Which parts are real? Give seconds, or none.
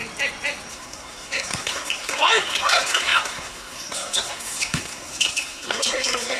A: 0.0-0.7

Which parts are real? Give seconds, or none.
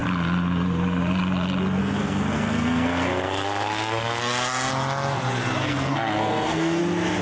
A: 0.0-1.8; 4.7-5.6; 6.8-7.2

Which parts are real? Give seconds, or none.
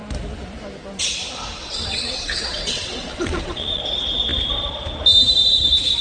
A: 0.0-1.6; 3.8-6.0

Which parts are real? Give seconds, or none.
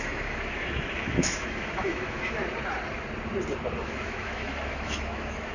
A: 2.4-3.8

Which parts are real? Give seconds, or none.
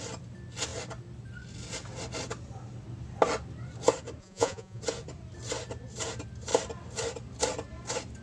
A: 0.0-4.2; 4.8-8.2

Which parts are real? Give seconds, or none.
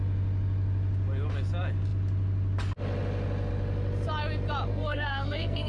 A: 0.0-4.7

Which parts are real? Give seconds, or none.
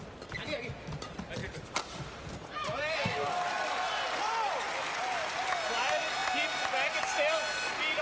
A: 0.0-8.0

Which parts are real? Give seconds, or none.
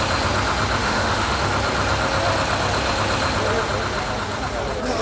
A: 0.0-0.8; 1.5-5.0